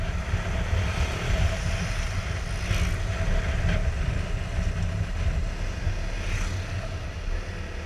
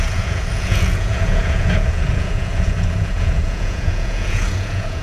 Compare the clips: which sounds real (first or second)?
first